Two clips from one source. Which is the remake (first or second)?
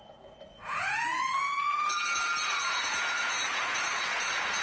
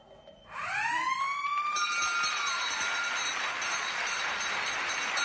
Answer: first